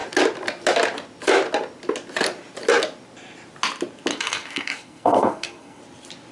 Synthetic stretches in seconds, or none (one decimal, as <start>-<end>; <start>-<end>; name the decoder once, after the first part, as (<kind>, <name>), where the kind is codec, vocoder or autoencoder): 4.1-5.8 (codec, SNAC)